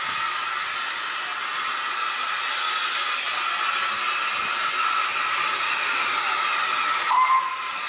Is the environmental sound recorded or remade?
recorded